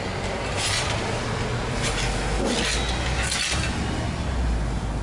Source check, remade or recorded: recorded